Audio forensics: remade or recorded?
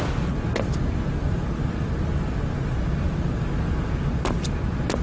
recorded